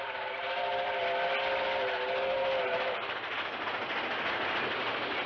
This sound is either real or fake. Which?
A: real